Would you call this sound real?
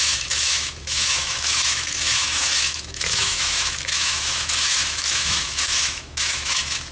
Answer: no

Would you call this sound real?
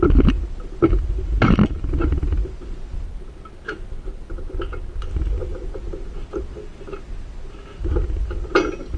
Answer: yes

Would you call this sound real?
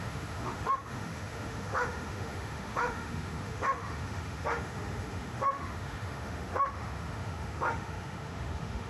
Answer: no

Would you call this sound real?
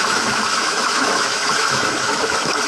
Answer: no